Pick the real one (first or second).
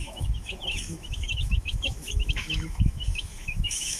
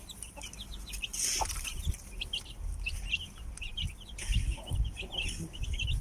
second